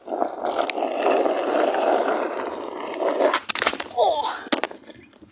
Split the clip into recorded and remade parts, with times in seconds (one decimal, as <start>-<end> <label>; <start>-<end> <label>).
0.0-1.4 recorded; 1.4-4.4 remade; 4.4-5.3 recorded

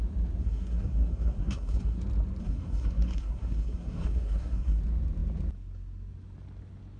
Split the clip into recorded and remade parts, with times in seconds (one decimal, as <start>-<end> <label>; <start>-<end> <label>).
0.0-0.4 recorded; 0.4-2.0 remade; 2.0-2.4 recorded; 2.4-4.8 remade; 4.8-7.0 recorded

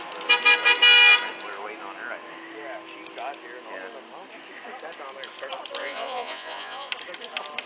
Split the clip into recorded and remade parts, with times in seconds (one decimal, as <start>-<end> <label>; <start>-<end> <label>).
0.0-5.8 recorded; 5.8-6.9 remade; 6.9-7.7 recorded

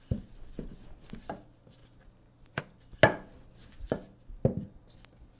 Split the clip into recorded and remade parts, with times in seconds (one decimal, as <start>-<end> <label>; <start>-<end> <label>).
0.0-1.8 recorded; 1.8-2.6 remade; 2.6-5.4 recorded

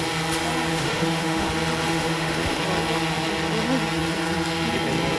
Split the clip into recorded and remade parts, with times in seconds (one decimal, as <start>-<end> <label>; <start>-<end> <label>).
0.0-0.7 recorded; 0.7-1.5 remade; 1.5-1.9 recorded; 1.9-2.6 remade; 2.6-5.2 recorded

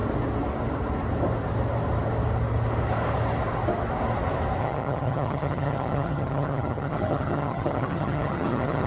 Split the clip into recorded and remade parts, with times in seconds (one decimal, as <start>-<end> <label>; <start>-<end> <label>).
0.0-4.6 recorded; 4.6-8.9 remade

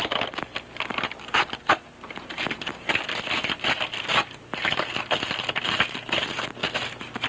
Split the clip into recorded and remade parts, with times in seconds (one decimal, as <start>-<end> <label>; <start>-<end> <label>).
0.0-7.3 recorded

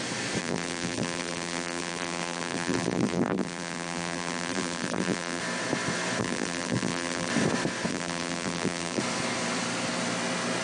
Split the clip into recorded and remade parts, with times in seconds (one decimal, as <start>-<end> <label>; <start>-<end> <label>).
0.0-0.4 recorded; 0.4-5.4 remade; 5.4-6.2 recorded; 6.2-7.3 remade; 7.3-7.9 recorded; 7.9-9.0 remade; 9.0-10.6 recorded